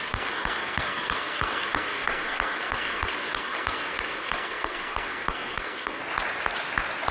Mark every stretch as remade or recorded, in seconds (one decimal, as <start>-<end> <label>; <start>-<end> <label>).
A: 0.0-6.0 remade; 6.0-7.1 recorded